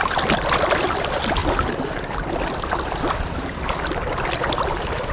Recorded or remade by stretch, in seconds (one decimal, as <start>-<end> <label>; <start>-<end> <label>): 0.0-1.4 remade; 1.4-4.5 recorded; 4.5-5.1 remade